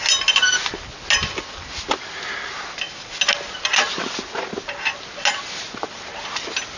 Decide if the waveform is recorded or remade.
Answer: recorded